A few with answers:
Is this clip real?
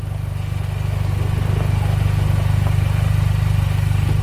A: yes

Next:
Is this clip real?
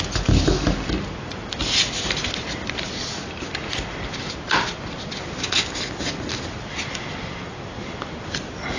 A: yes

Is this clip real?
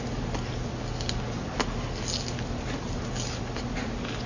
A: yes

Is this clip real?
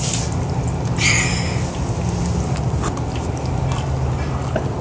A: yes